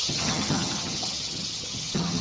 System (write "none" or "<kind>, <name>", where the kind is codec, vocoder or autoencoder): vocoder, HiFi-GAN